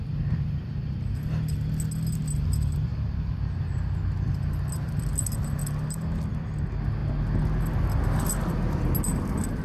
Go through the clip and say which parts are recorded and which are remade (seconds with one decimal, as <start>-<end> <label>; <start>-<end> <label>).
0.0-9.6 recorded